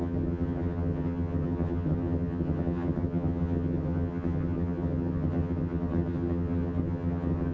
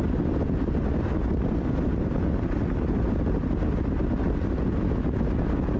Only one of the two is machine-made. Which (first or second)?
first